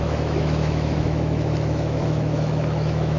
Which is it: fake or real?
fake